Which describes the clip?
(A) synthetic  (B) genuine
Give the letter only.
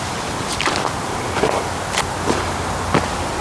B